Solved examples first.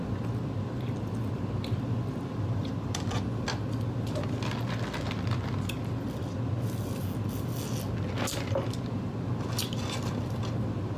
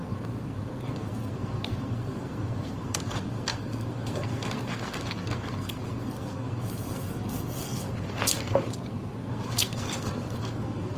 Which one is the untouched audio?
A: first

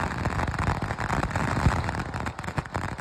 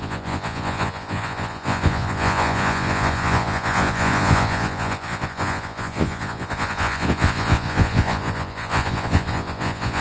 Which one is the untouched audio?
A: first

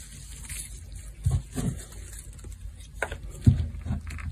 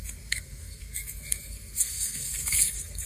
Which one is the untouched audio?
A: first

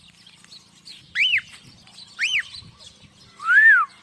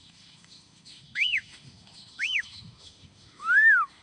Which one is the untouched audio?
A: first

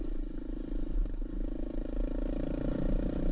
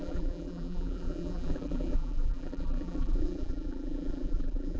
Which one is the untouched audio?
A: first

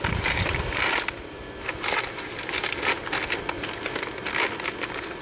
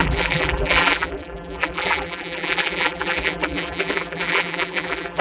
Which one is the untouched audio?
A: first